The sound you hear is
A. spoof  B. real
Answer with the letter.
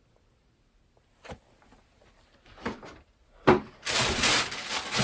B